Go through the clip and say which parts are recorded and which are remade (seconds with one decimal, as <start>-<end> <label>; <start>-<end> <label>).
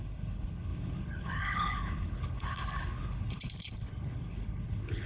0.0-5.1 remade